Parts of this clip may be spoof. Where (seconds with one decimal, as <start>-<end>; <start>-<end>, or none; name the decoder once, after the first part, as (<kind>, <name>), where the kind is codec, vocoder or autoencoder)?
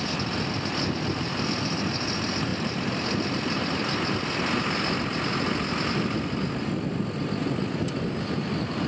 none